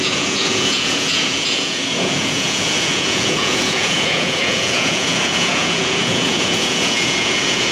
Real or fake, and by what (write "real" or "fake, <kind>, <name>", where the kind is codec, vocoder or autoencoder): fake, vocoder, Vocos